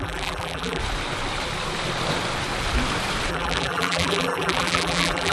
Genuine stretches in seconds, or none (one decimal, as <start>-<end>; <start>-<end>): 0.8-3.3